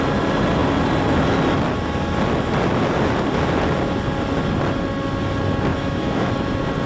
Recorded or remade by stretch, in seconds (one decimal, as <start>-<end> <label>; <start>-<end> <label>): 0.0-5.7 recorded; 5.7-6.3 remade; 6.3-6.9 recorded